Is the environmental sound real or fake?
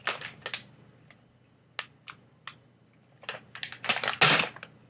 real